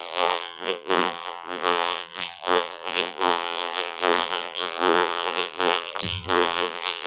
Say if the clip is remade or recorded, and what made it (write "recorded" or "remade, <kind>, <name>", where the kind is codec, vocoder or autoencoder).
remade, vocoder, BigVGAN v2